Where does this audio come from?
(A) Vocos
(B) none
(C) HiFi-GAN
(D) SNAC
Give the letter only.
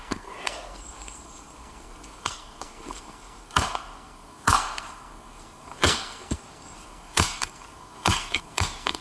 D